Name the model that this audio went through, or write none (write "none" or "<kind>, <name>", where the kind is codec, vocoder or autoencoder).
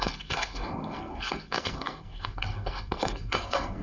codec, SNAC